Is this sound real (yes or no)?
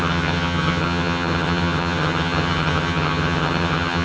no